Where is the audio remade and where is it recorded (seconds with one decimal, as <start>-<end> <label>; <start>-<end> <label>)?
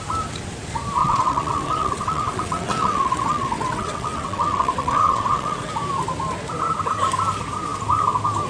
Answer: 0.0-1.0 recorded; 1.0-5.7 remade; 5.7-8.5 recorded